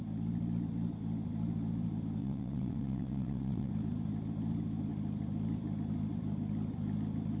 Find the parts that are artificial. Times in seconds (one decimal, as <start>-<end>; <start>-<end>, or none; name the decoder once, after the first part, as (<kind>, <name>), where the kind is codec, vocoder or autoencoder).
2.2-3.7 (vocoder, WaveNeXt)